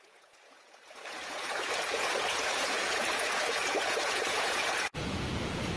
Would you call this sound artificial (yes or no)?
yes